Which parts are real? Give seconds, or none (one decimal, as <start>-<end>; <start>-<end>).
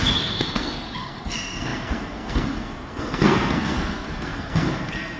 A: none